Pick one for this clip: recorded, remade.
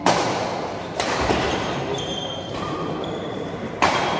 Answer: remade